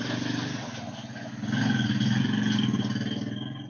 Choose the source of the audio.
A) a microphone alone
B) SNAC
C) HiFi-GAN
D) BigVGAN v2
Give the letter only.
A